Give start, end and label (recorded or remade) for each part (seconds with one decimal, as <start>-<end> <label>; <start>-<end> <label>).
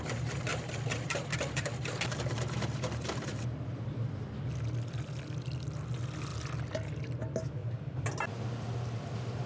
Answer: 0.0-0.5 recorded; 0.5-4.0 remade; 4.0-7.6 recorded; 7.6-8.1 remade; 8.1-9.5 recorded